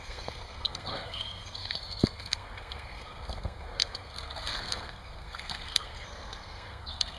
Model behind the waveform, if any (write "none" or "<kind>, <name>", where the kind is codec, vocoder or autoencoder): codec, SNAC